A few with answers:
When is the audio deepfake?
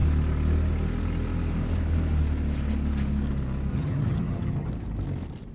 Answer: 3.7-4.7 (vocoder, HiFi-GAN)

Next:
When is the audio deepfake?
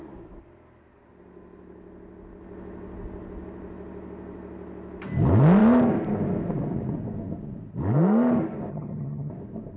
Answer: 8.7-9.3 (vocoder, HiFi-GAN)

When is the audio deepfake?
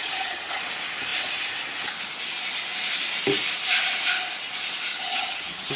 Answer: 0.0-0.6 (vocoder, HiFi-GAN); 4.9-5.8